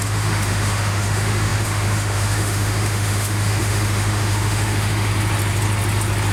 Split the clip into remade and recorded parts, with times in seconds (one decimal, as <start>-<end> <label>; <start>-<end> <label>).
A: 0.0-5.1 remade; 5.1-6.3 recorded